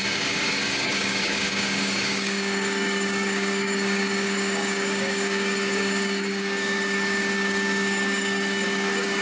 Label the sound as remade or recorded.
remade